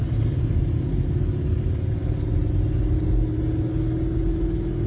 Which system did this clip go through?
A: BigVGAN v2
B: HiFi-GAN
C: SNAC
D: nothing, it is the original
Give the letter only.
D